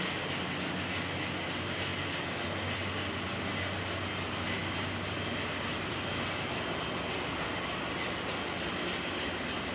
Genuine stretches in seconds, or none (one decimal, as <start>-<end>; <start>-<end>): 0.0-9.7